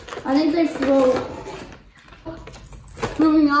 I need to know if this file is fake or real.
real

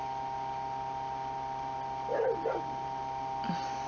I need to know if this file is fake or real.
real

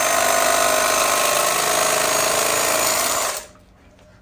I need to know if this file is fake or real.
real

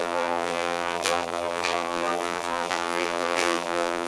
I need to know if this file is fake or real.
fake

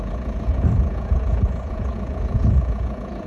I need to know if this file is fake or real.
fake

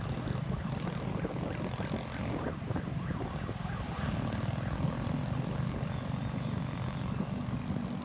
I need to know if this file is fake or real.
real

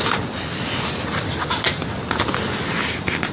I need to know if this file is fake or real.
real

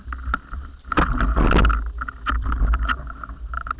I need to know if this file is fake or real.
real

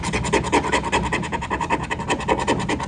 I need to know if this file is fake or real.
real